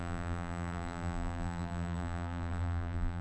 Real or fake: fake